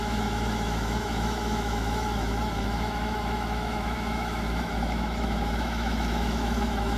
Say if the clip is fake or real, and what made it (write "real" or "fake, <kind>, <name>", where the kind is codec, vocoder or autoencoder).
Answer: fake, autoencoder, DAC-VAE